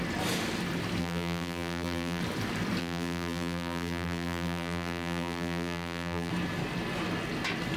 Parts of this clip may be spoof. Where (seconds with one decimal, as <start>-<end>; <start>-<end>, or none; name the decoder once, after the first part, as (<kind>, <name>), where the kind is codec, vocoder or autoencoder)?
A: 1.0-2.2 (vocoder, BigVGAN v2); 2.8-6.3